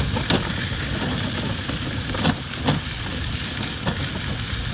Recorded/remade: recorded